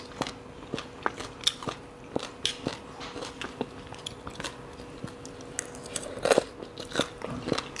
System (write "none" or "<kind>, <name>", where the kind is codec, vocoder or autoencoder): none